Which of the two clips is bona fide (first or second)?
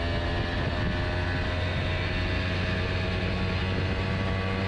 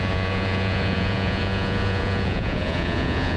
first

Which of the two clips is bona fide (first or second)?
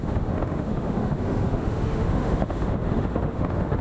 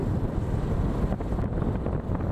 second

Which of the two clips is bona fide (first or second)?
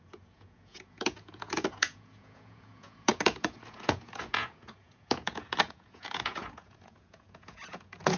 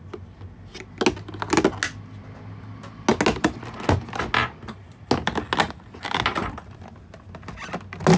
second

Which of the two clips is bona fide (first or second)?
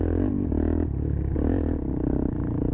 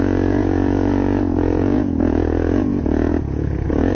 first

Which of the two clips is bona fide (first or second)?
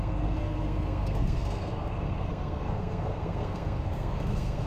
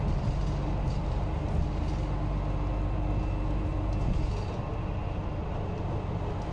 second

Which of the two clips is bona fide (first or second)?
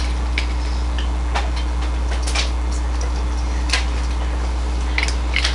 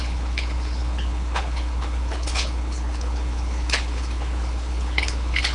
first